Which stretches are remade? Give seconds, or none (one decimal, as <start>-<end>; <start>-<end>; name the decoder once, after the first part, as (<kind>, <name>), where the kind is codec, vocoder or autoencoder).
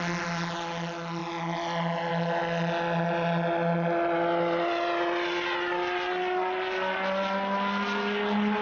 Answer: none